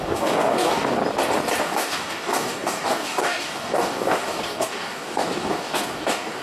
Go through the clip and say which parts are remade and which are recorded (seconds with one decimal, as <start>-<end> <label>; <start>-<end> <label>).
0.0-1.0 remade; 1.0-1.6 recorded; 1.6-6.4 remade